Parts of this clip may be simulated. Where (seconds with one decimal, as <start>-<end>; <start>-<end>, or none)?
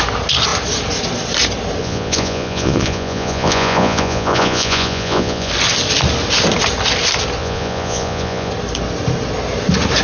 1.8-5.5; 7.4-8.5